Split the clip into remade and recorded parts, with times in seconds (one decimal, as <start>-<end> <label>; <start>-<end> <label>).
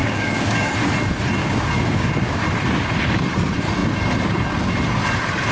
0.0-0.7 remade; 0.7-1.4 recorded; 1.4-2.4 remade; 2.4-5.5 recorded